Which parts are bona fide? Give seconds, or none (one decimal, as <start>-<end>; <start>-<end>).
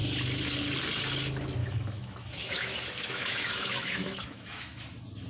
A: 0.0-1.6; 4.8-5.3